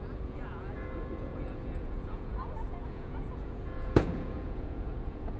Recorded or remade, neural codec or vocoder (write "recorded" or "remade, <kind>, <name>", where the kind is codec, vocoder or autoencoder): remade, vocoder, Vocos